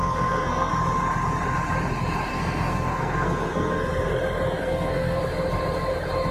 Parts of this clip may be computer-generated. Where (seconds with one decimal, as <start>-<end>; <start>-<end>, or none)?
0.0-0.7; 2.3-3.9; 4.6-5.2